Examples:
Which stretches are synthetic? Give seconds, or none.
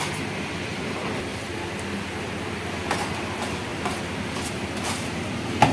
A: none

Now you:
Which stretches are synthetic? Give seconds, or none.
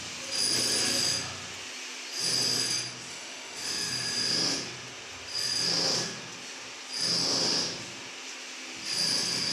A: 3.1-3.9 (autoencoder, DAC-VAE)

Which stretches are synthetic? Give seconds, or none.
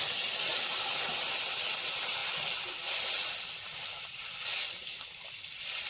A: 2.2-5.9 (vocoder, BigVGAN v2)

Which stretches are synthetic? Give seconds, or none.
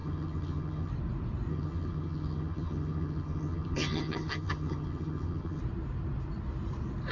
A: 0.0-0.9 (vocoder, HiFi-GAN); 1.5-5.6